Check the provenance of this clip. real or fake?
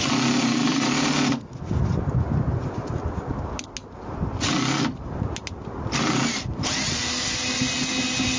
real